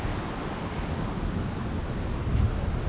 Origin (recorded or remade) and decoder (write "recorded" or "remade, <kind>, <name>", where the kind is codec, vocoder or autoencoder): recorded